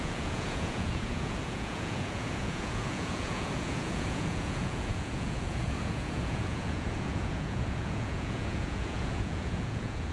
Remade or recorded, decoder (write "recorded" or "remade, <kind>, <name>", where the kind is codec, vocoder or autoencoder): remade, vocoder, Vocos